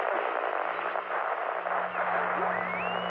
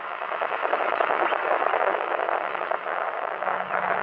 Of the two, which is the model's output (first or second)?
second